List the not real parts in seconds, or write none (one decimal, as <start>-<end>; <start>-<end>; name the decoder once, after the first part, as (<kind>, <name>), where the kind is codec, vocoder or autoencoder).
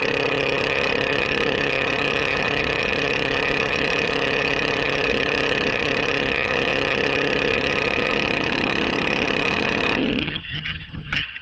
0.0-11.4 (vocoder, HiFi-GAN)